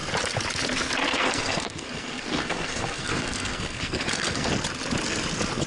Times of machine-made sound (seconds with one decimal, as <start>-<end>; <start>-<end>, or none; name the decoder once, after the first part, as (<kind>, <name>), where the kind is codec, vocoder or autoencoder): 1.1-4.5 (codec, SNAC)